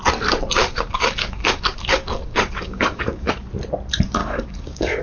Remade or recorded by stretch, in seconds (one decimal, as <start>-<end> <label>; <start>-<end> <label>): 0.0-0.6 recorded; 0.6-3.3 remade; 3.3-4.2 recorded; 4.2-5.0 remade